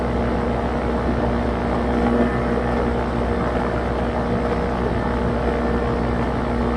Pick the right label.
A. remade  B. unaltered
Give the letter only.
B